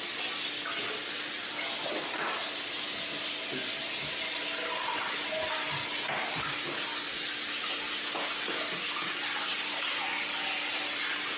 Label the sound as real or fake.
real